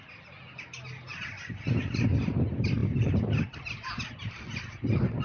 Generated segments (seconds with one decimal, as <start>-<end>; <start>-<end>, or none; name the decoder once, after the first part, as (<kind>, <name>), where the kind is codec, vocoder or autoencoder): none